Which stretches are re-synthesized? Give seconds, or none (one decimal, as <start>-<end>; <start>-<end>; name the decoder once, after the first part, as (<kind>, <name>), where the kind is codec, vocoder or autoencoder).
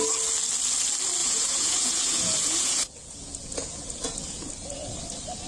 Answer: 1.2-4.5 (vocoder, Vocos)